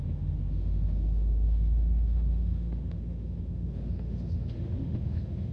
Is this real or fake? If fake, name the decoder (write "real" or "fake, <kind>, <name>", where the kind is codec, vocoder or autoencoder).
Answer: fake, autoencoder, DAC-VAE